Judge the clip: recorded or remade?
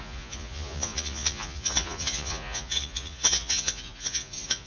remade